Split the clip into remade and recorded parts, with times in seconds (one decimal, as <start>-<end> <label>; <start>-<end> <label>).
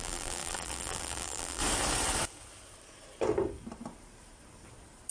0.0-1.6 remade; 1.6-5.1 recorded